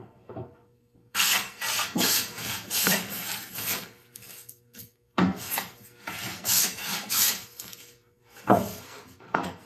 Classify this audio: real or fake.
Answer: fake